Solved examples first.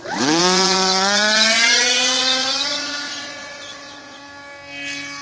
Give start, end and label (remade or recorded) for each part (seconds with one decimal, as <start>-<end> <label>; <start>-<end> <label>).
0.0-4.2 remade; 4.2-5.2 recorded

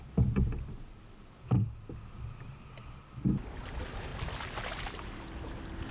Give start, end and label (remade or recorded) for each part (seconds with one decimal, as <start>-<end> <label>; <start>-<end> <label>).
0.0-5.9 recorded

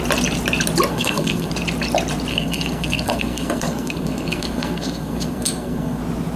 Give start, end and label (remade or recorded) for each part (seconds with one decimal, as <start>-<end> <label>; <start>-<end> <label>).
0.0-0.9 recorded; 0.9-1.5 remade; 1.5-2.3 recorded; 2.3-6.0 remade; 6.0-6.4 recorded

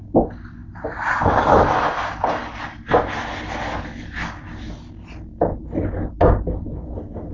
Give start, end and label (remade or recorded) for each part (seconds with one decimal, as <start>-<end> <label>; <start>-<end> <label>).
0.0-7.3 recorded

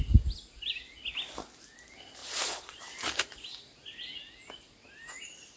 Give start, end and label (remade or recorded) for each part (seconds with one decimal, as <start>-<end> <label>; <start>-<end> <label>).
0.0-2.2 recorded; 2.2-2.8 remade; 2.8-5.6 recorded

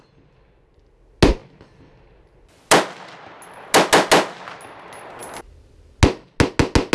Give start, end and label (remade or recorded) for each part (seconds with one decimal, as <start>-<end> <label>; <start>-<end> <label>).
0.0-6.9 recorded